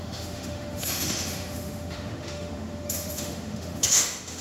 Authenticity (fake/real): fake